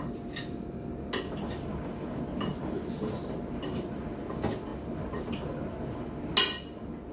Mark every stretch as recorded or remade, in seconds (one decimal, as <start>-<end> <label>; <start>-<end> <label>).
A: 0.0-2.5 recorded; 2.5-3.5 remade; 3.5-7.1 recorded